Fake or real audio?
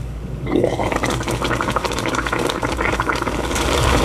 fake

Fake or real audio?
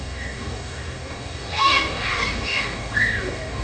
fake